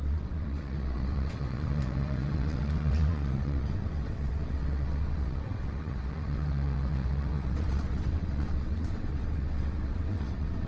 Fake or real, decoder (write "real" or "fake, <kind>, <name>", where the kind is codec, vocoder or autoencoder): fake, vocoder, WaveNeXt